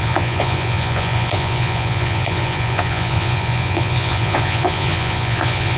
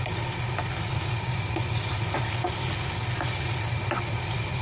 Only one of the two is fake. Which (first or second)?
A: first